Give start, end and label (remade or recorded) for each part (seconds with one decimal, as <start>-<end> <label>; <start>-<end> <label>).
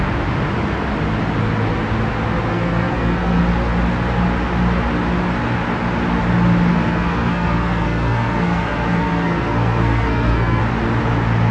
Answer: 0.0-2.5 recorded; 2.5-3.4 remade; 3.4-6.7 recorded; 6.7-10.6 remade; 10.6-11.5 recorded